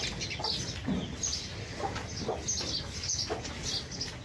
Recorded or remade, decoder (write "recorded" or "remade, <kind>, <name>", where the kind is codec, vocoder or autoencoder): recorded